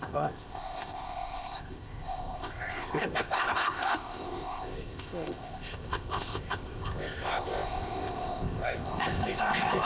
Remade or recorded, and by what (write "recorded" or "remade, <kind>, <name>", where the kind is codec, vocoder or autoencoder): remade, codec, ZipCodec